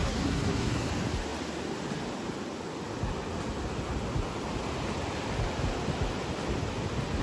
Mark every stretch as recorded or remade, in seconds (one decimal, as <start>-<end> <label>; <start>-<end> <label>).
0.0-0.9 remade; 0.9-7.2 recorded